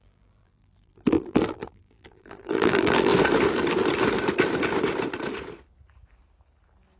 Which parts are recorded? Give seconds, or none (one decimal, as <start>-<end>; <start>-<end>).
3.1-7.0